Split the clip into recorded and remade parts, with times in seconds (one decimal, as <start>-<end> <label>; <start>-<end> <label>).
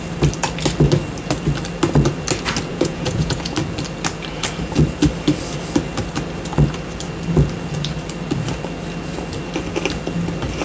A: 0.0-2.7 recorded; 2.7-3.4 remade; 3.4-10.6 recorded